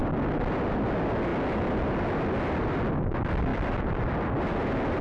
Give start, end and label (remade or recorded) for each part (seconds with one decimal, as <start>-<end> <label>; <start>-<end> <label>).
0.0-5.0 recorded